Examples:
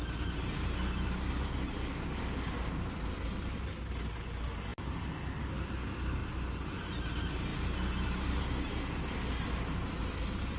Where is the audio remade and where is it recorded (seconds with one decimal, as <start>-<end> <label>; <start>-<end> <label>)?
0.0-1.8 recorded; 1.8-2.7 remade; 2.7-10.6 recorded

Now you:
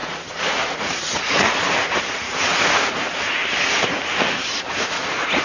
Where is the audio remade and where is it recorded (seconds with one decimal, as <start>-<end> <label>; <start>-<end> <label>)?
0.0-3.4 remade; 3.4-4.6 recorded; 4.6-5.4 remade

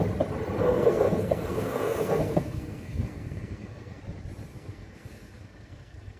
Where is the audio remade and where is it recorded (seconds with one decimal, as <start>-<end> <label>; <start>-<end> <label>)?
0.0-0.6 recorded; 0.6-4.0 remade; 4.0-4.5 recorded; 4.5-6.2 remade